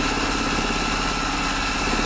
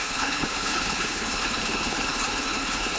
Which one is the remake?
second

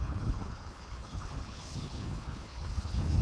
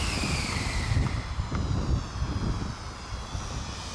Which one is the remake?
first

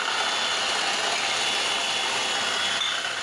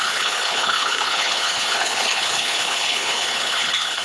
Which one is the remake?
second